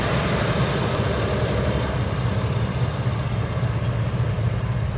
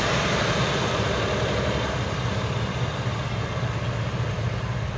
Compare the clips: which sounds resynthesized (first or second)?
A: first